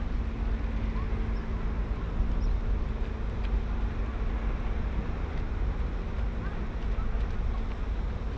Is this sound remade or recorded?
recorded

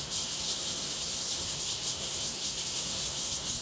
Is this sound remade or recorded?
remade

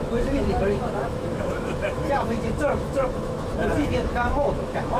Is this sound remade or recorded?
remade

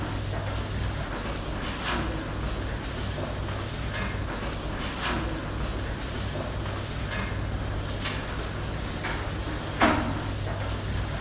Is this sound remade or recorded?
recorded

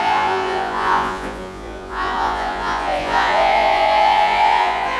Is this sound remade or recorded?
remade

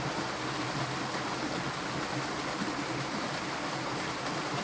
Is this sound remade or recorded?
recorded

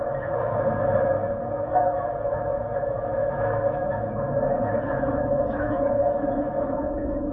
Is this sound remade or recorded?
remade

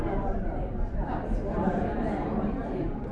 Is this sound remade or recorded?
remade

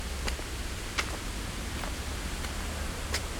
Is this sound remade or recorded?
recorded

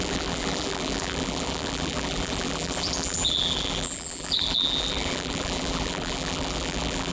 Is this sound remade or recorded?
remade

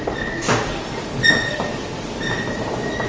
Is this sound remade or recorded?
recorded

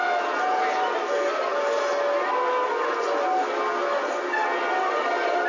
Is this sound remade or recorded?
recorded